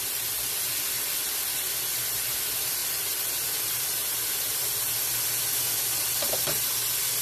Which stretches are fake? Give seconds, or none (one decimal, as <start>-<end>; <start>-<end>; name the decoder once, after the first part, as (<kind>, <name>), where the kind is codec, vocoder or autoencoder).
2.8-3.8 (vocoder, BigVGAN v2)